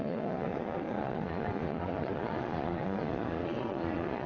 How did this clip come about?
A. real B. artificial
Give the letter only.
B